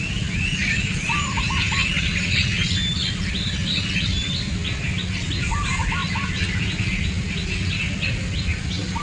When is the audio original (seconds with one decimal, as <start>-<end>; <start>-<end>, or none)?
0.0-9.0